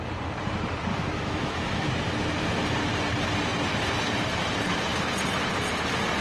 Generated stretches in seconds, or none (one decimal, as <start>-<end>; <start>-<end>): 0.9-1.9